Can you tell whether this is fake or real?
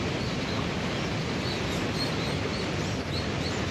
real